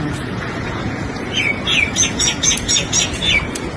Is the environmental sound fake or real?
fake